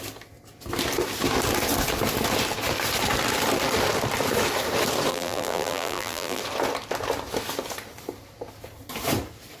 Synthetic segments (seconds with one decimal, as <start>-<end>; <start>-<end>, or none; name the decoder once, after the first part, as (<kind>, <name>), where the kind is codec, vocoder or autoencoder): 5.1-6.4 (vocoder, BigVGAN v2)